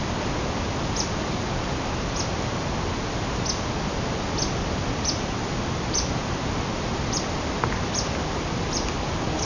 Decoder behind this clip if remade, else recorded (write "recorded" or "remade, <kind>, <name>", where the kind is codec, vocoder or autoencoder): recorded